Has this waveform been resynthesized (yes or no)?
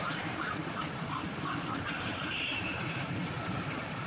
yes